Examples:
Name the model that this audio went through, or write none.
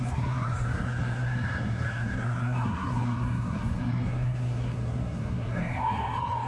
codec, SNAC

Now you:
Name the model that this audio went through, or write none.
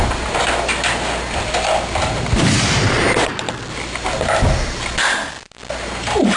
none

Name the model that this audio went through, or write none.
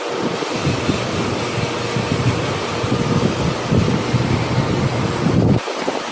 none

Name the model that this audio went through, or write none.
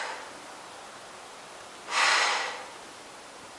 none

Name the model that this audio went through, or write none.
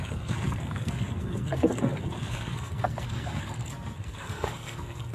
codec, SNAC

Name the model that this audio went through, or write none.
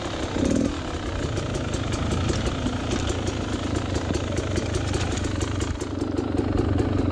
none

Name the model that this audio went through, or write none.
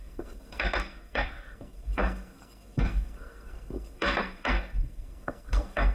codec, SNAC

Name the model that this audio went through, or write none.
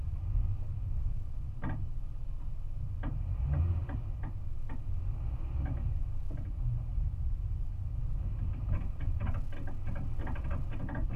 none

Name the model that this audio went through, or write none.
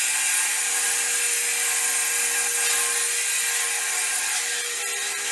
none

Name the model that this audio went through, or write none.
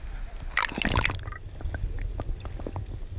none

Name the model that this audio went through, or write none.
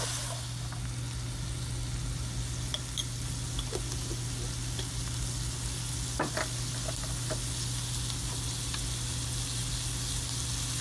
none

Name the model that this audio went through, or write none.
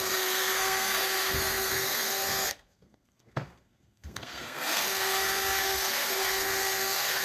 codec, SNAC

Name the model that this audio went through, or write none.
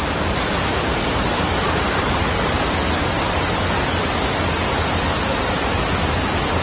none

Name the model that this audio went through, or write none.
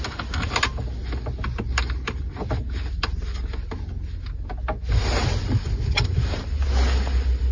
none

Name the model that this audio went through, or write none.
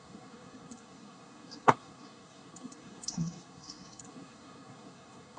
codec, SNAC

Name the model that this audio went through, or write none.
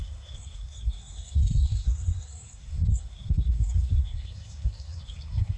codec, SNAC